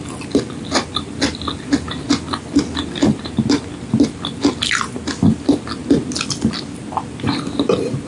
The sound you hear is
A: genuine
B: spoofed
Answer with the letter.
A